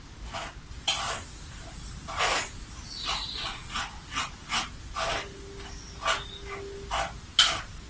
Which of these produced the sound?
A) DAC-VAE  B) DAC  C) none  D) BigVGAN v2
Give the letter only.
C